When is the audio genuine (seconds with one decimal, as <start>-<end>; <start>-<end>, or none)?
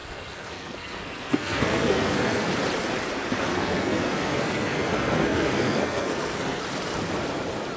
2.5-3.5; 6.6-7.8